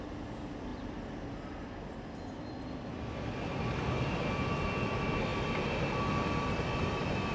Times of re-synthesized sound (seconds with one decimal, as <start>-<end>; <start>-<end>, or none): none